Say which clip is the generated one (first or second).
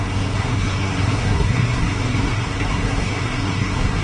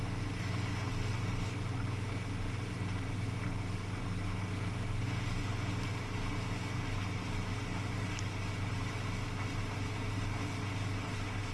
first